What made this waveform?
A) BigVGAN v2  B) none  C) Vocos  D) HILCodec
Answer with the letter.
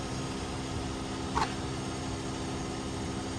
B